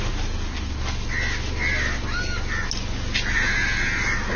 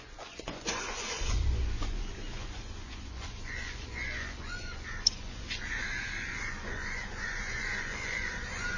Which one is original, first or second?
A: first